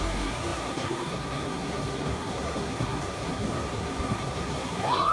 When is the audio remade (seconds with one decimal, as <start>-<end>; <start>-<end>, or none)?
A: 0.0-5.1